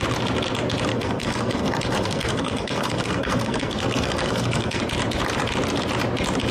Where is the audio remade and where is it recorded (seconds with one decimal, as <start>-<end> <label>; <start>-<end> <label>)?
0.0-0.9 recorded; 0.9-4.8 remade; 4.8-6.5 recorded